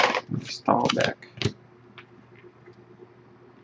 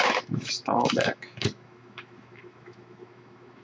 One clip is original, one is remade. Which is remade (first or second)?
second